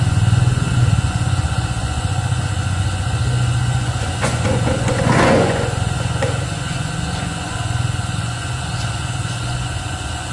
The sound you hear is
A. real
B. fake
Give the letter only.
B